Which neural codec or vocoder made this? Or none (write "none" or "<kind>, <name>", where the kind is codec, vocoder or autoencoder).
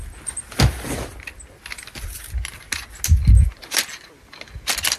none